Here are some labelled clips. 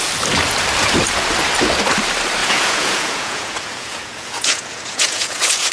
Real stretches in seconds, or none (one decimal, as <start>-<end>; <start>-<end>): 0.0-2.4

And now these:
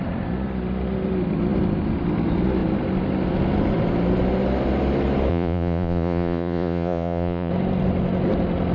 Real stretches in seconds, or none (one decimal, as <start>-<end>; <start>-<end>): 0.0-5.3; 7.5-8.7

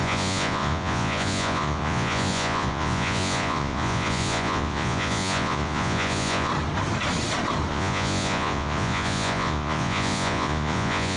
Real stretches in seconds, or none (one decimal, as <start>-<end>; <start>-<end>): 6.5-7.7

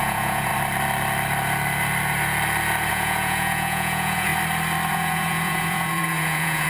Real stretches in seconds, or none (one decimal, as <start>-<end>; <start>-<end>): 0.5-2.9; 4.3-4.9

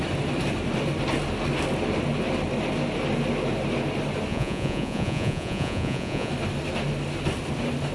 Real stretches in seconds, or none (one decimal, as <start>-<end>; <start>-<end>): 0.0-4.3; 6.3-7.9

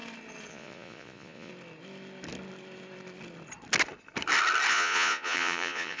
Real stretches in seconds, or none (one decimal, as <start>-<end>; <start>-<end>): 0.0-0.5; 1.5-4.7

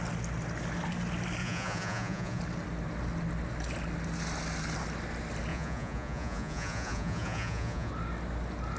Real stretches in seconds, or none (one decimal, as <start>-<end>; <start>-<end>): 0.0-1.4; 2.4-5.5; 7.9-8.8